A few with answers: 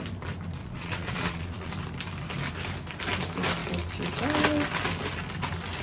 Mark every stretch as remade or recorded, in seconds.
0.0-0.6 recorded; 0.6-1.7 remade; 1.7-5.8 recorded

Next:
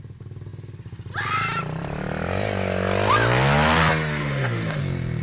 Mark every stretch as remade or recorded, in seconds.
0.0-4.2 recorded; 4.2-4.8 remade; 4.8-5.2 recorded

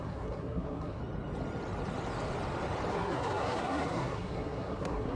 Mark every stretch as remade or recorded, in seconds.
0.0-1.0 remade; 1.0-2.9 recorded; 2.9-5.2 remade

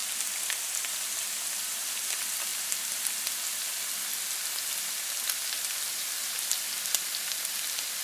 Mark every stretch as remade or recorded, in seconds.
0.0-8.0 recorded

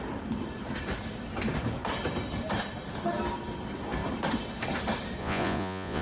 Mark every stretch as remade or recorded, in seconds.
0.0-5.2 recorded; 5.2-6.0 remade

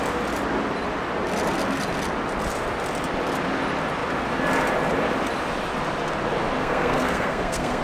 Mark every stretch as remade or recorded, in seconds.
0.0-6.6 recorded; 6.6-7.8 remade

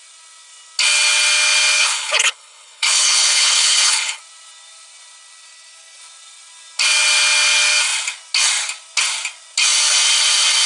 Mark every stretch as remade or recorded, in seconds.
0.0-1.8 recorded; 1.8-4.2 remade; 4.2-10.7 recorded